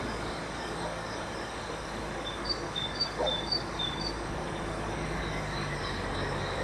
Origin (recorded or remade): remade